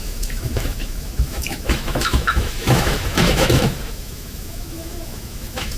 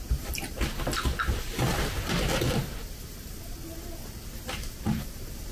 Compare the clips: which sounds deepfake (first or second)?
first